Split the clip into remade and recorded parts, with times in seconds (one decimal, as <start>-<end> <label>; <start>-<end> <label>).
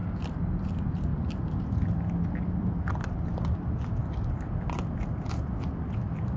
0.0-6.4 recorded